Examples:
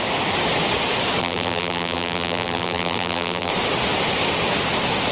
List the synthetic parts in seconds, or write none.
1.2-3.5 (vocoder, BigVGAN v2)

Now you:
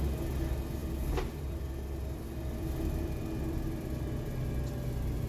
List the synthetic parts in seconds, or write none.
0.8-4.0 (vocoder, BigVGAN v2)

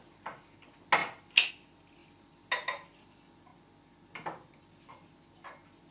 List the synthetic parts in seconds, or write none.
none

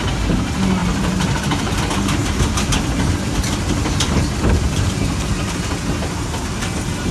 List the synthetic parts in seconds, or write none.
0.8-4.9 (vocoder, BigVGAN v2)

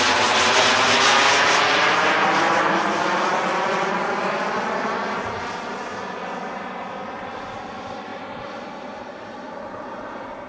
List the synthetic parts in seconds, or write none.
8.1-10.0 (vocoder, BigVGAN v2)